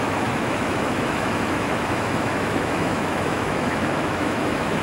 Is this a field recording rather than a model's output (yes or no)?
no